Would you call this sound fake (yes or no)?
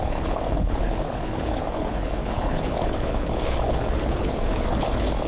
yes